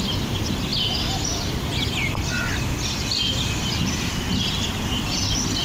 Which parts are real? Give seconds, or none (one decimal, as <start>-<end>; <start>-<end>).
0.0-5.6